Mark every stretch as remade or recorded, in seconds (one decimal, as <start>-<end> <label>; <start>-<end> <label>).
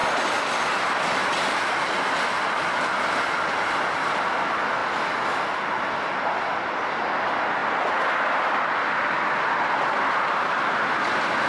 0.0-11.5 recorded